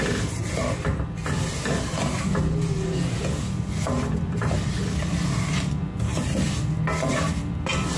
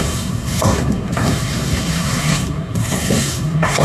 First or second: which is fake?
second